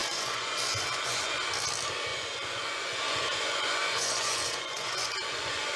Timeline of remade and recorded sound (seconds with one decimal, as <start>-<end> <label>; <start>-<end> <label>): 0.0-1.4 remade; 1.4-2.1 recorded; 2.1-5.8 remade